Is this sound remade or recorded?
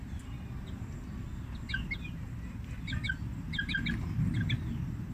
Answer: recorded